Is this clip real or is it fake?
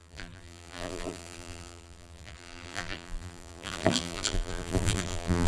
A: fake